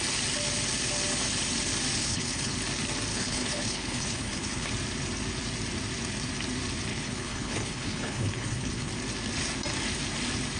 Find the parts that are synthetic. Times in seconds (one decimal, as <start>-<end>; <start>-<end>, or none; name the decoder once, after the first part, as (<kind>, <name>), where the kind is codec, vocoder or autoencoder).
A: 2.0-2.5 (codec, HILCodec); 3.1-4.7; 6.9-8.9